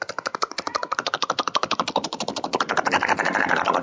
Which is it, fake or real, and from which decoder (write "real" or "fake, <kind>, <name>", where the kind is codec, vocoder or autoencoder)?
real